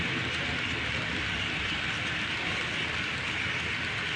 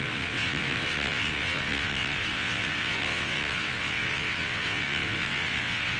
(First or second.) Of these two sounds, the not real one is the second